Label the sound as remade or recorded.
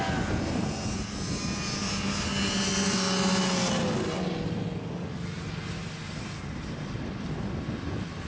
recorded